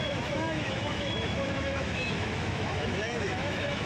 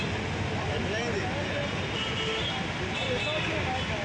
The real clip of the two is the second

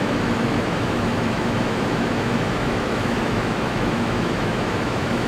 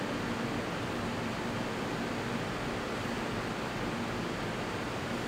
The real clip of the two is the second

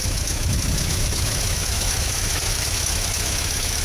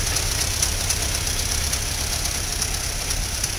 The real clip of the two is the second